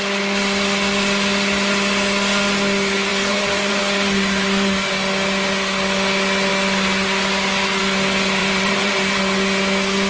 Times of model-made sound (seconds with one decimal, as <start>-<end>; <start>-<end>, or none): 3.1-3.8; 8.4-9.2